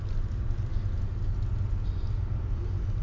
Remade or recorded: recorded